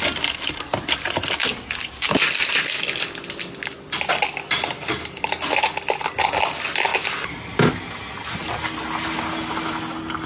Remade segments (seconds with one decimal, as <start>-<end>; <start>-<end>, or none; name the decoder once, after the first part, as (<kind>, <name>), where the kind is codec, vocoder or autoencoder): none